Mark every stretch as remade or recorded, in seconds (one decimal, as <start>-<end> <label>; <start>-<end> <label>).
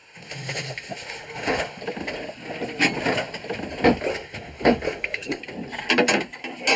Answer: 0.0-1.8 remade; 1.8-4.1 recorded; 4.1-5.4 remade; 5.4-6.8 recorded